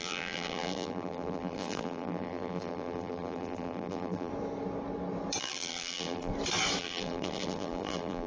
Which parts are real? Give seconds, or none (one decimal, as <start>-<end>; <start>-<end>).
4.3-5.4; 6.3-6.8